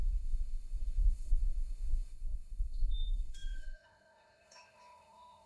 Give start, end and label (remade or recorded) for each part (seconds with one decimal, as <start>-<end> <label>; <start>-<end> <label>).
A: 0.0-5.5 remade